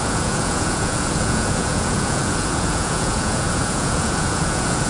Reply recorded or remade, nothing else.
remade